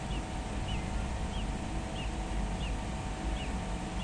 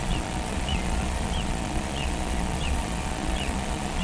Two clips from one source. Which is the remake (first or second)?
second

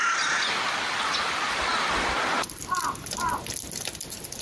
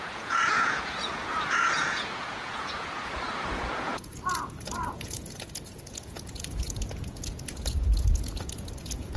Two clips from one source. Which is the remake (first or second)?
second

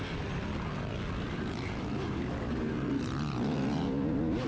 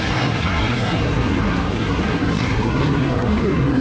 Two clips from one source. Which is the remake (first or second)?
second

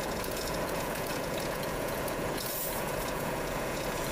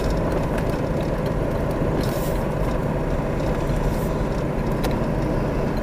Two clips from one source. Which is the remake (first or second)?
first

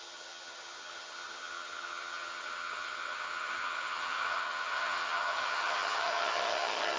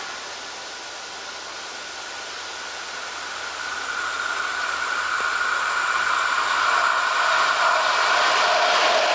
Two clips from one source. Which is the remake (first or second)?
first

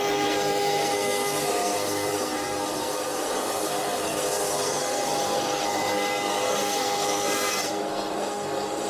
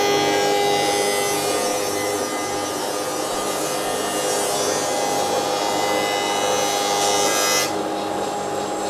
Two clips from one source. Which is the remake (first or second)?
first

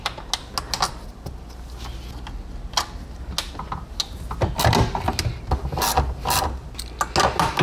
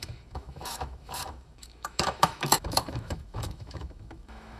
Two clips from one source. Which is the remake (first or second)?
second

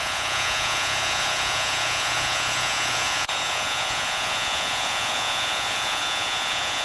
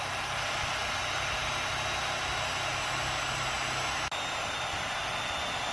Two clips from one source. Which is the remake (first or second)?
first